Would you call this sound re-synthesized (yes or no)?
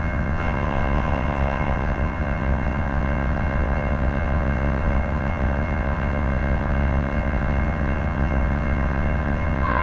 yes